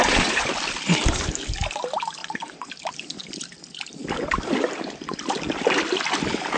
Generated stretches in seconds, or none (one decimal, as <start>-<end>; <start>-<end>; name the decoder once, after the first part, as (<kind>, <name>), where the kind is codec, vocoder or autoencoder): 0.0-0.5 (vocoder, Vocos); 2.2-2.7